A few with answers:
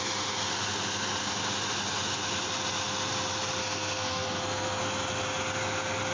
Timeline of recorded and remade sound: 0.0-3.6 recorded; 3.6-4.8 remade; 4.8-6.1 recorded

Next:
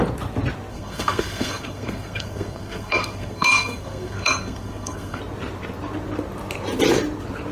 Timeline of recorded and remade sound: 0.0-0.7 recorded; 0.7-5.2 remade; 5.2-7.5 recorded

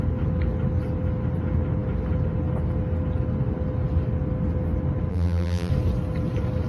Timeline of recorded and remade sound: 0.0-5.1 recorded; 5.1-5.7 remade; 5.7-6.7 recorded

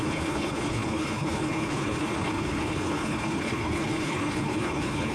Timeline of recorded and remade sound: 0.0-5.1 remade

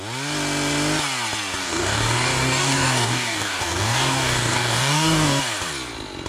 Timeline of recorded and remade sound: 0.0-1.6 recorded; 1.6-5.4 remade; 5.4-6.3 recorded